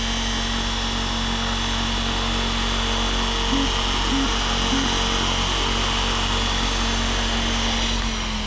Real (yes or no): yes